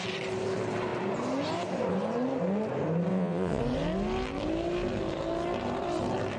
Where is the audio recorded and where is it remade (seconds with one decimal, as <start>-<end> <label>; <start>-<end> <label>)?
0.0-3.1 recorded; 3.1-3.6 remade; 3.6-6.4 recorded